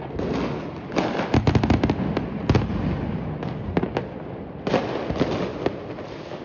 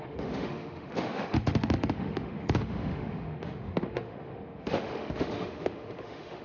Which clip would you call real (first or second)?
first